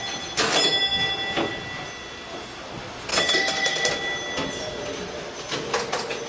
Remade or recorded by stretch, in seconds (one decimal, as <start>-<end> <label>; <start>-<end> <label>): 0.0-3.1 recorded; 3.1-3.9 remade; 3.9-6.3 recorded